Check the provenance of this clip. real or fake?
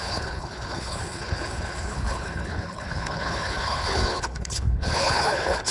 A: fake